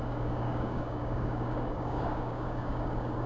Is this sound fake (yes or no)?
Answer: yes